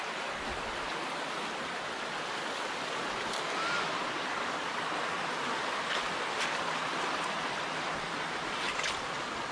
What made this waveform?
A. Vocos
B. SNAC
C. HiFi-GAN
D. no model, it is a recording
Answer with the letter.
D